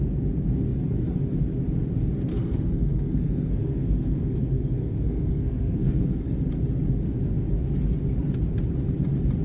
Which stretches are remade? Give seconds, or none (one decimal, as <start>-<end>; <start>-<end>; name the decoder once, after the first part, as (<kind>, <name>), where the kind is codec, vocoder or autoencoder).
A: 2.3-6.4 (codec, SNAC)